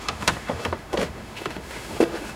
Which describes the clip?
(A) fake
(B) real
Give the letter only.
A